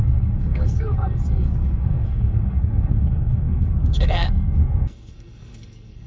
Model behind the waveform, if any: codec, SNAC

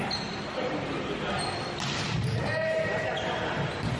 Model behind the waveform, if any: none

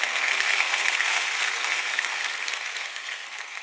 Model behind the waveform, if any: codec, SNAC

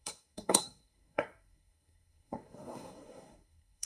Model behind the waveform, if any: codec, SNAC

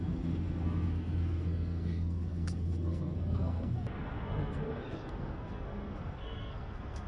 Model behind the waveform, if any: codec, SNAC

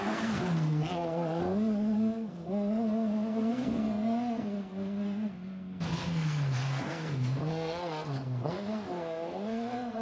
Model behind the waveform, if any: codec, SNAC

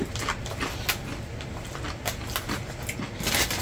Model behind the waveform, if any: none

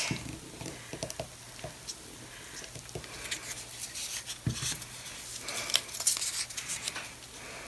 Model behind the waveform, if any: none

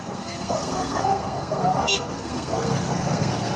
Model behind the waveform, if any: codec, SNAC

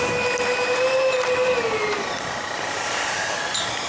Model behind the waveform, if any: none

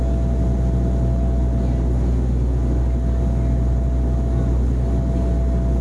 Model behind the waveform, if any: none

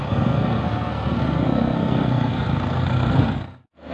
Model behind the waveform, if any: codec, SNAC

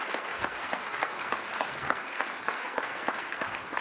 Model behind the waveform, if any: codec, SNAC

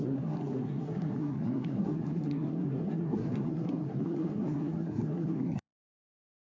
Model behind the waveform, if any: codec, SNAC